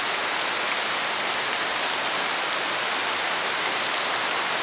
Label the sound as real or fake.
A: real